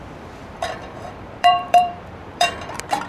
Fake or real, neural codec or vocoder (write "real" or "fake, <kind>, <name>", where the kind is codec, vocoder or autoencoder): fake, vocoder, BigVGAN v2